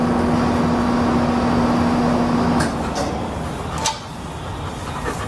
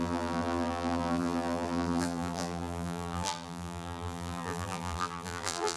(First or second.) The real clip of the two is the first